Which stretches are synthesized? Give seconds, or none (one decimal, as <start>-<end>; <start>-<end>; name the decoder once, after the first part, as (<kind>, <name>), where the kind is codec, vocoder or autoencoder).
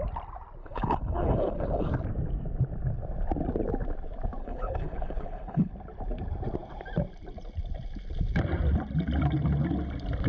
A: 0.6-1.9 (codec, HILCodec); 4.4-5.7